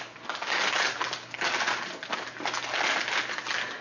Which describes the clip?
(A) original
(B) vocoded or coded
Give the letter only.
A